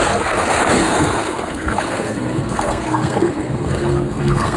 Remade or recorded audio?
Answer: remade